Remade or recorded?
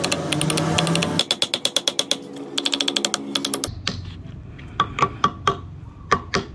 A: recorded